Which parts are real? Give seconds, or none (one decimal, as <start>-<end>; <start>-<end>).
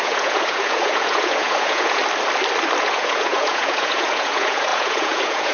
2.0-2.8